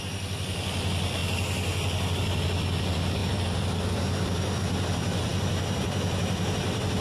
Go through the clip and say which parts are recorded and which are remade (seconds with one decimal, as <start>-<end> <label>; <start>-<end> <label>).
0.0-1.2 remade; 1.2-2.2 recorded; 2.2-7.0 remade